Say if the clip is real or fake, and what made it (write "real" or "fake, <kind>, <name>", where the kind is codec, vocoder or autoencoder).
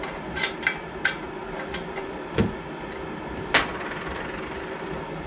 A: real